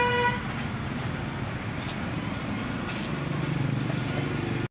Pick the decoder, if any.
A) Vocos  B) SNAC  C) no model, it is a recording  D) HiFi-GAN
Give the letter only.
C